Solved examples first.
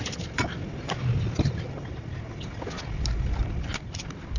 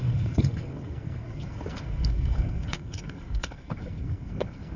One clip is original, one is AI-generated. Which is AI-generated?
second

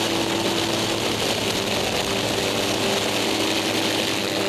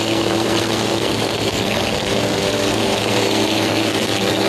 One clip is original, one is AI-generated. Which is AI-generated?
second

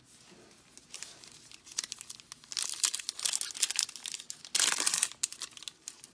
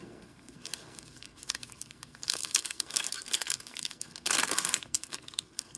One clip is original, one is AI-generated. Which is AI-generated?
second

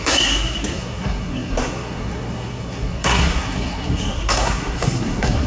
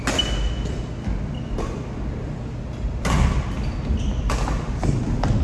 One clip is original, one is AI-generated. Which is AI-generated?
first